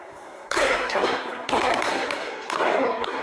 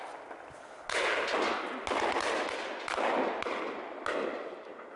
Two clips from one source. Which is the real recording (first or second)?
second